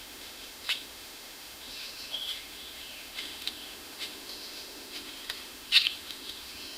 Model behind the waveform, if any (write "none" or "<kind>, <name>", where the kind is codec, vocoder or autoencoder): autoencoder, DAC-VAE